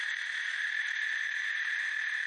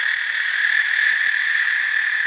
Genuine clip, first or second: second